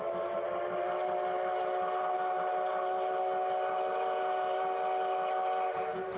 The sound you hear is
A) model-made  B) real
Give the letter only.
B